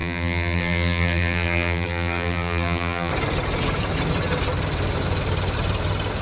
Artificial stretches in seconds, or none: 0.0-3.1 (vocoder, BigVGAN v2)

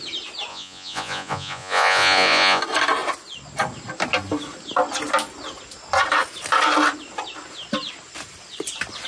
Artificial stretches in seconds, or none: 0.5-2.6 (vocoder, Vocos)

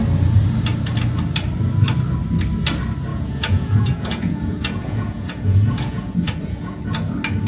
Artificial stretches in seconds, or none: 3.1-6.8 (vocoder, Vocos)

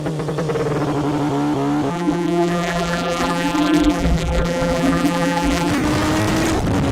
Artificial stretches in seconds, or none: 1.9-5.7 (vocoder, BigVGAN v2)

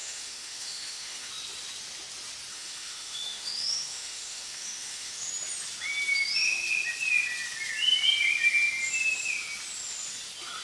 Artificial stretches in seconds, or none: 0.0-1.3 (autoencoder, DAC-VAE); 2.5-5.3